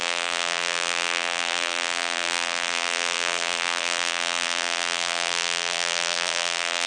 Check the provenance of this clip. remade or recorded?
remade